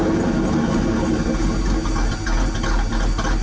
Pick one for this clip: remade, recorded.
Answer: recorded